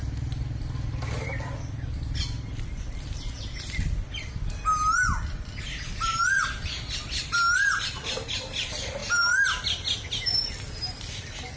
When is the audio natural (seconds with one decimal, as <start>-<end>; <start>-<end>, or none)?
0.0-11.6